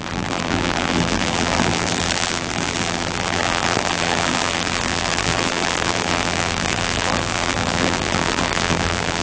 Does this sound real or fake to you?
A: fake